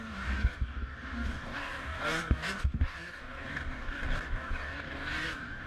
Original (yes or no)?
no